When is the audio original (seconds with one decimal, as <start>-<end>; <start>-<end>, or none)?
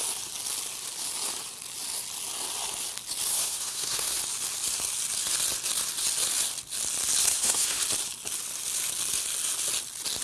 0.0-3.3; 4.2-7.2; 7.8-10.2